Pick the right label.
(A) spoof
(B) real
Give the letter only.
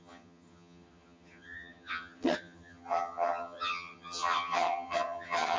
A